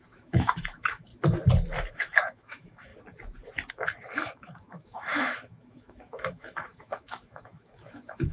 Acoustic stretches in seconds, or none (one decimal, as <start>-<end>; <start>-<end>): 1.1-1.9; 2.9-3.7